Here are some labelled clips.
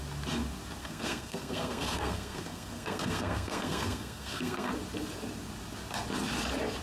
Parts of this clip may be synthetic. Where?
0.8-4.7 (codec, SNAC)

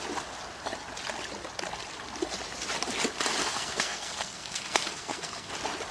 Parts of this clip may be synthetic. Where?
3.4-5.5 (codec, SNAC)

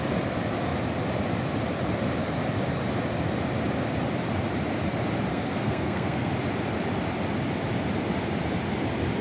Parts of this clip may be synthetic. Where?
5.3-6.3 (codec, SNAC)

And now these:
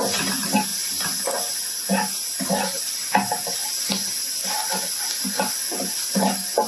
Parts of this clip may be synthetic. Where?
none

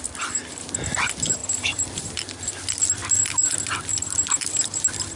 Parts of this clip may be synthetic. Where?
1.4-2.0 (vocoder, BigVGAN v2); 3.0-3.5; 3.9-4.5

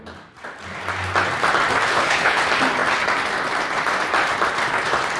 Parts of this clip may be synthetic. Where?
1.9-2.4 (codec, HILCodec)

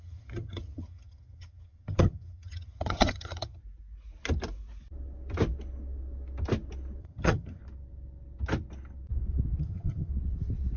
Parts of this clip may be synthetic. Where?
0.0-3.6 (vocoder, HiFi-GAN); 7.0-7.6; 9.6-10.1

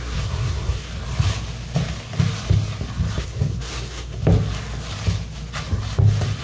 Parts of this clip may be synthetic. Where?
0.0-0.9 (codec, SNAC); 3.2-4.2